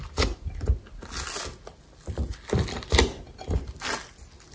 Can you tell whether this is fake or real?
real